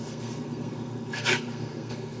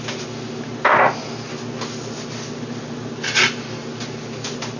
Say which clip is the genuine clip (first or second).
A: second